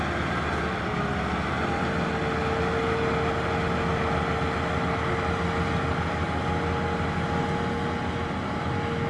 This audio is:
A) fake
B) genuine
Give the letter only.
B